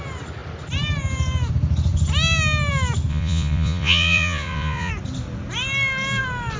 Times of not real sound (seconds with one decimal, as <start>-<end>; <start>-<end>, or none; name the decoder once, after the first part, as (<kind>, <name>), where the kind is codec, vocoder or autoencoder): 3.1-4.9 (vocoder, Vocos)